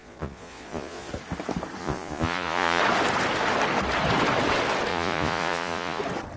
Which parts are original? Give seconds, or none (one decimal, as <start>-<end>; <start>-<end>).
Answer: 1.1-1.8; 2.8-4.9; 6.0-6.4